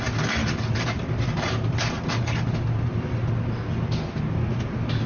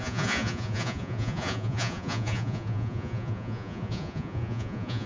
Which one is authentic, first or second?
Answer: first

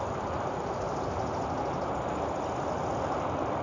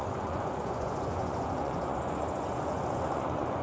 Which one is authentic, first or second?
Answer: first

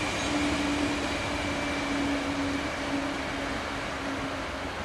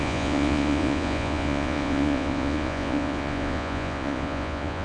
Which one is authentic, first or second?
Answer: first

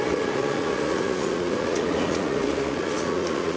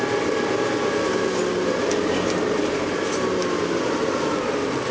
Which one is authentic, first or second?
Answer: second